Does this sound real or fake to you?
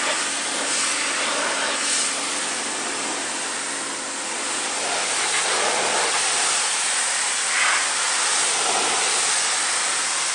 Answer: real